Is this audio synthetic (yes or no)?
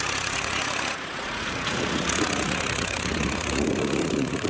yes